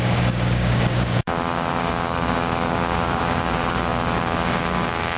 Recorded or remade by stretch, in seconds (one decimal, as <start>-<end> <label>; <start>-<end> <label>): 0.0-5.2 remade